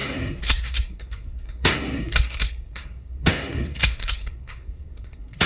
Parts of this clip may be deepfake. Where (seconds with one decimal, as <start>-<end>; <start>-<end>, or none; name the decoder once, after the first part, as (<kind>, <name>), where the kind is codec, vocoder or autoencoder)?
0.0-5.5 (codec, SNAC)